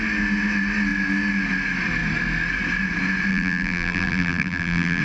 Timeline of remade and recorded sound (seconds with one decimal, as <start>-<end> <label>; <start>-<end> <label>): 0.0-3.3 recorded; 3.3-5.0 remade